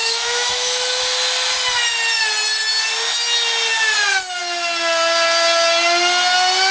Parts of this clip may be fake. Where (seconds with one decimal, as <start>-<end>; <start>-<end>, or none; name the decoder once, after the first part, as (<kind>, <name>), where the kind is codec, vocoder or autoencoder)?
0.0-1.0 (autoencoder, DAC-VAE)